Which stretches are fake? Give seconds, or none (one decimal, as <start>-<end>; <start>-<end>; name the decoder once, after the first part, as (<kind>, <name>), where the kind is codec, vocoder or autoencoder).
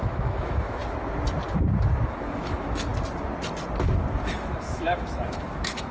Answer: 0.0-0.8 (autoencoder, DAC-VAE); 2.1-2.9; 4.2-5.9